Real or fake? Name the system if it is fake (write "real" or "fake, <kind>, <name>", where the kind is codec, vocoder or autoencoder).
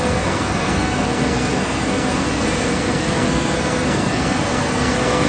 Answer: fake, codec, SNAC